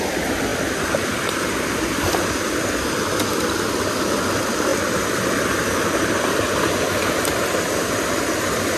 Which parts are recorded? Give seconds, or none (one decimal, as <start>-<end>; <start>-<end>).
0.0-8.8